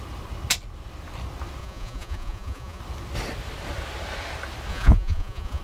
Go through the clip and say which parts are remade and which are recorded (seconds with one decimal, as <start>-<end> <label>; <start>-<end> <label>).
0.0-1.6 recorded; 1.6-2.8 remade; 2.8-4.7 recorded; 4.7-5.6 remade